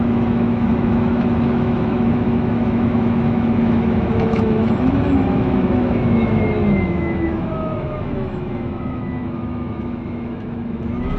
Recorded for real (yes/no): no